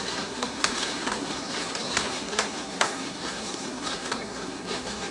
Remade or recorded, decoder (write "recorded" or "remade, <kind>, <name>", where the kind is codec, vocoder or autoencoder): remade, codec, SNAC